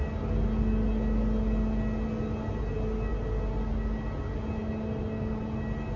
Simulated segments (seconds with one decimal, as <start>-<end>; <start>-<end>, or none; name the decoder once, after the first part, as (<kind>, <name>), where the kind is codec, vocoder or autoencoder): none

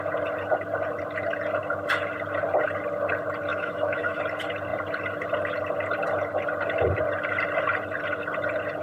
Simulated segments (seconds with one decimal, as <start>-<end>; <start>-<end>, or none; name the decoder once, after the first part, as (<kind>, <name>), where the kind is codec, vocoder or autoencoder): 3.5-4.2 (autoencoder, DAC-VAE)

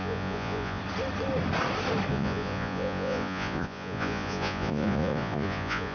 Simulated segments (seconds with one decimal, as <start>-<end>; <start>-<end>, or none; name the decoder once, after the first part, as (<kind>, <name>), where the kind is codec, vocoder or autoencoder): 0.0-0.8 (vocoder, Vocos); 2.1-5.9

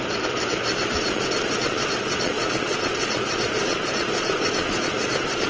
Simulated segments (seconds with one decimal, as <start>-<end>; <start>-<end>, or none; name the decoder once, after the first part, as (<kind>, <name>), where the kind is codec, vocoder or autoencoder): 0.9-5.5 (vocoder, Vocos)

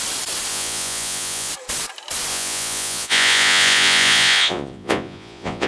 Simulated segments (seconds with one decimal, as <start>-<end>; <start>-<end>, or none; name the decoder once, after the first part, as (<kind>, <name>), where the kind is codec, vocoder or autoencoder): 0.5-1.5 (vocoder, Vocos); 2.3-5.7

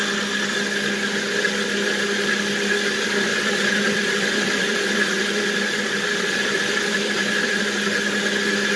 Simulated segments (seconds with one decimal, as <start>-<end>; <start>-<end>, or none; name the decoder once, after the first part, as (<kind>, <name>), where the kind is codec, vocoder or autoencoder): 3.3-7.6 (vocoder, BigVGAN v2)

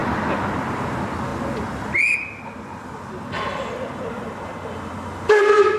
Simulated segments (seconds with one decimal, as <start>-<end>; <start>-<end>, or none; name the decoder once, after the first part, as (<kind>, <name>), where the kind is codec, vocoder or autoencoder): none

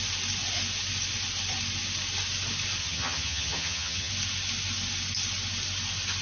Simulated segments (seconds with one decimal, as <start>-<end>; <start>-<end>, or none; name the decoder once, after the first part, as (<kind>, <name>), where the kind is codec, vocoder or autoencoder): 2.8-4.1 (vocoder, HiFi-GAN)